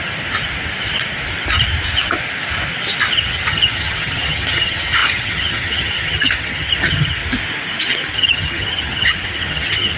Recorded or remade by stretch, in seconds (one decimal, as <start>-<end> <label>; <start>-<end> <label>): 0.0-3.2 recorded; 3.2-7.2 remade; 7.2-8.1 recorded; 8.1-10.0 remade

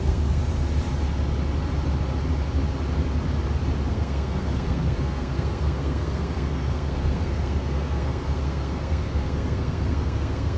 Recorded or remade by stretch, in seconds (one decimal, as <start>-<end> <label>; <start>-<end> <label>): 0.0-0.4 remade; 0.4-3.9 recorded; 3.9-10.6 remade

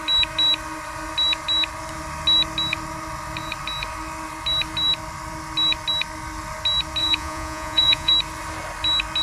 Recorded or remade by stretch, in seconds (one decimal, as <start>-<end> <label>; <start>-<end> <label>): 0.0-7.0 recorded; 7.0-8.1 remade; 8.1-9.2 recorded